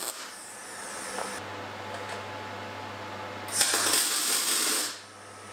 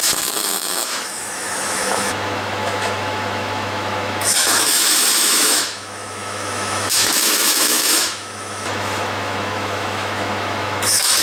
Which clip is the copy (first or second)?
second